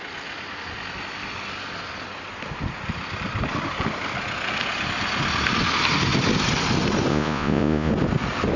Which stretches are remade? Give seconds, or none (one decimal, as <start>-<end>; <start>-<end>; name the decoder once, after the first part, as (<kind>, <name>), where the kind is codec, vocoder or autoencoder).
7.1-7.9 (vocoder, Vocos)

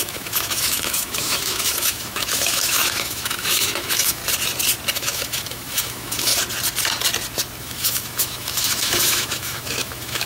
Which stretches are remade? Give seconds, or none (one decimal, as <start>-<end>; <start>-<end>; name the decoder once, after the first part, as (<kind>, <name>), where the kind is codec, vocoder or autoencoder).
0.0-4.2 (autoencoder, DAC-VAE); 4.9-6.3; 7.6-10.3

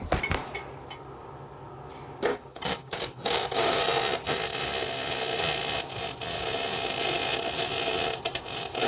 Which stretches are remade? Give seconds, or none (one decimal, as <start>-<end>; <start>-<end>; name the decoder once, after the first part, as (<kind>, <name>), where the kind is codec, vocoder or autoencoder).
2.3-3.8 (codec, DAC)

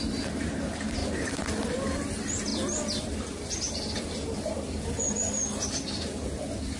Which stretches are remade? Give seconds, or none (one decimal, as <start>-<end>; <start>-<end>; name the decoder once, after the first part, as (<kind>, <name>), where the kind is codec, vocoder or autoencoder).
2.5-3.2 (vocoder, BigVGAN v2)

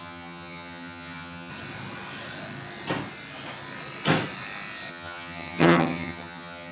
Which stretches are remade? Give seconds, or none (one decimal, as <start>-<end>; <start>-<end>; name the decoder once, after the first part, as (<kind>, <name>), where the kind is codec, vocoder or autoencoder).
0.0-1.5 (vocoder, HiFi-GAN); 4.9-6.7

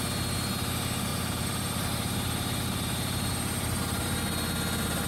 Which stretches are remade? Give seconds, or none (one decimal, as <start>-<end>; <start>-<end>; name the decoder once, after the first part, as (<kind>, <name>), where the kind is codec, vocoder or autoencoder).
1.1-4.2 (vocoder, BigVGAN v2)

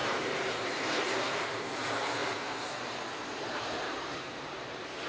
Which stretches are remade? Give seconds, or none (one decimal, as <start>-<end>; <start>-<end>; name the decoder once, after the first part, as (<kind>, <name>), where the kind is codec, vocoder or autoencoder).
0.0-1.2 (vocoder, BigVGAN v2); 2.2-5.1